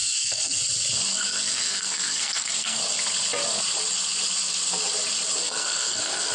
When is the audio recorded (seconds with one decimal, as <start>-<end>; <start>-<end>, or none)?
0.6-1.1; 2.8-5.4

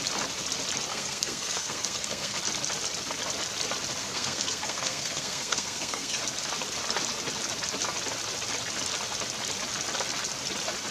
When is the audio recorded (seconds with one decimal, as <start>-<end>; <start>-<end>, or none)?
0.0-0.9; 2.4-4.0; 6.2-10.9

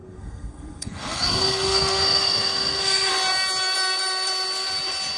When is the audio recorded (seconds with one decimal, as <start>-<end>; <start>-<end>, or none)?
3.1-5.2

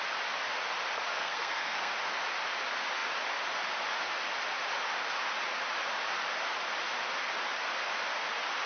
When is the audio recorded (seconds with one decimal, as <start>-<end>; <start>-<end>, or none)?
0.0-1.1; 1.9-8.7

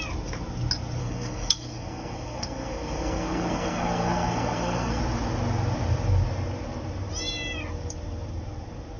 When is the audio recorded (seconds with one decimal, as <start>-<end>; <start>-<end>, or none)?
0.0-1.0; 5.0-9.0